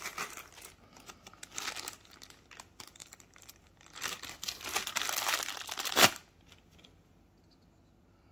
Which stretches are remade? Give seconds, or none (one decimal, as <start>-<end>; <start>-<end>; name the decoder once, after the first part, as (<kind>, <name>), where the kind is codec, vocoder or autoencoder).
3.0-6.1 (vocoder, BigVGAN v2)